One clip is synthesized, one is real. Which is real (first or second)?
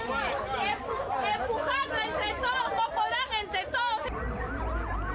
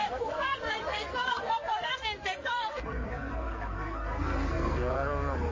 first